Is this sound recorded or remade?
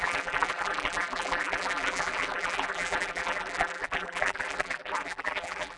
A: remade